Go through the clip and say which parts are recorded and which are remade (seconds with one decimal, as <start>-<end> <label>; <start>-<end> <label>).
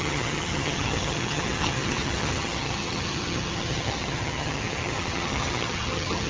0.0-6.3 remade